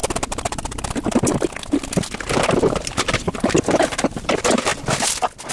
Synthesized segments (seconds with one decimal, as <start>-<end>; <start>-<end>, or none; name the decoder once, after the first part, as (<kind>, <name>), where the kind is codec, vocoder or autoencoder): 2.6-4.7 (vocoder, BigVGAN v2)

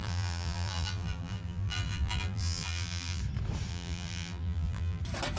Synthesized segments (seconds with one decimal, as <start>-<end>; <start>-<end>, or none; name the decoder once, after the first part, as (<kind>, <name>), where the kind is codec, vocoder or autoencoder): 0.0-3.2 (vocoder, BigVGAN v2); 3.7-5.0

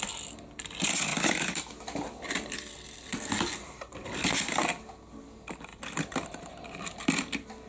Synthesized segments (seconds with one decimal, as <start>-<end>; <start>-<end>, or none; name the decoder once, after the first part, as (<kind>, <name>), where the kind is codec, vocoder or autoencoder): 1.1-5.2 (vocoder, BigVGAN v2)

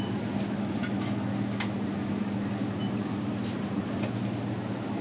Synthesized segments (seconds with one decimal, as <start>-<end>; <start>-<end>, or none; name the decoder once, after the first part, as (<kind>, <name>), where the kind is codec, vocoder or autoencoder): none

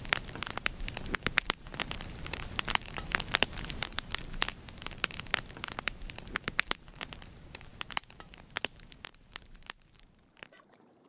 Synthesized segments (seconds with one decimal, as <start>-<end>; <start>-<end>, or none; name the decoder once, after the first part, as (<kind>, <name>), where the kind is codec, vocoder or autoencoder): 0.0-11.1 (vocoder, BigVGAN v2)

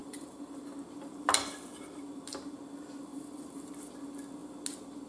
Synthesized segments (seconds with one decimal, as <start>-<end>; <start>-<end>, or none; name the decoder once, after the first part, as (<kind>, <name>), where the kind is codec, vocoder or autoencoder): 0.0-0.6 (vocoder, BigVGAN v2); 3.1-3.7

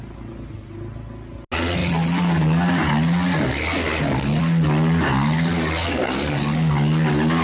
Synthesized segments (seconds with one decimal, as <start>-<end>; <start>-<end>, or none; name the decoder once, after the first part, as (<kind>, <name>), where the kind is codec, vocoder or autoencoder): none

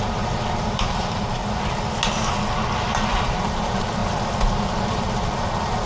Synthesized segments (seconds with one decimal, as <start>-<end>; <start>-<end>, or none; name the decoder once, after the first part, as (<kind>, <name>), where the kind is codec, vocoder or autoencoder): 0.0-1.4 (vocoder, BigVGAN v2); 2.8-4.0; 4.8-5.9